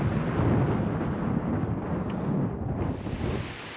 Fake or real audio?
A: real